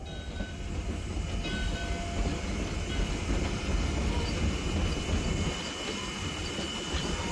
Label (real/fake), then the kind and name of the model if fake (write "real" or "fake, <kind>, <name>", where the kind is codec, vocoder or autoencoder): real